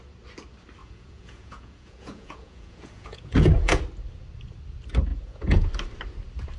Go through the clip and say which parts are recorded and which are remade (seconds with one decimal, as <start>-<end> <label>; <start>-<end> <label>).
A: 0.0-0.8 recorded; 0.8-3.8 remade; 3.8-5.1 recorded; 5.1-5.7 remade; 5.7-6.6 recorded